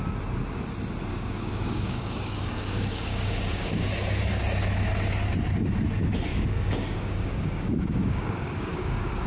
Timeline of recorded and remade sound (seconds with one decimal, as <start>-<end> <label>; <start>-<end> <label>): 0.0-1.1 recorded; 1.1-3.9 remade; 3.9-6.3 recorded; 6.3-9.3 remade